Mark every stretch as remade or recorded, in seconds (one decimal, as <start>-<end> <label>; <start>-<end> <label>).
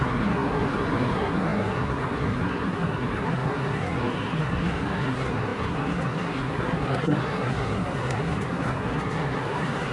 0.0-9.9 remade